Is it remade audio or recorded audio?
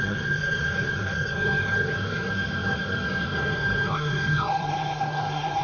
remade